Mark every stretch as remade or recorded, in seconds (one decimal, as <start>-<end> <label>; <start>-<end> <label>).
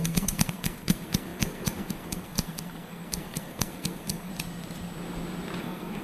0.0-4.3 remade; 4.3-5.6 recorded; 5.6-6.0 remade